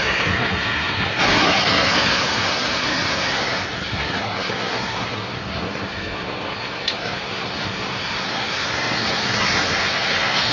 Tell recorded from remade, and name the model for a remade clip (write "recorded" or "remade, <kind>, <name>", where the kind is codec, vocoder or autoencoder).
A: remade, codec, SNAC